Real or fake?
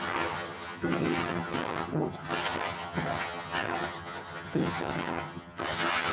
fake